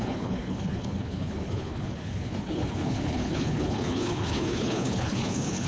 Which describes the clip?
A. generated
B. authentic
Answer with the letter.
A